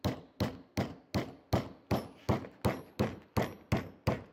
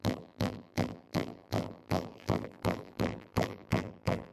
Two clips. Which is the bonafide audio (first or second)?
first